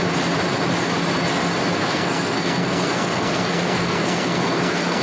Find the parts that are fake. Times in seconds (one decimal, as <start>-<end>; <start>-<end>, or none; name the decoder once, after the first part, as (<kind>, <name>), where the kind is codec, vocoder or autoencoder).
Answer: 1.8-5.0 (codec, SNAC)